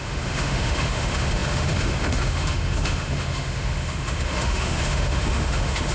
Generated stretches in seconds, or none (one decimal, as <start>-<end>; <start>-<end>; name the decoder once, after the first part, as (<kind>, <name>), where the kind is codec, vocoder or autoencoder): 0.0-5.9 (autoencoder, DAC-VAE)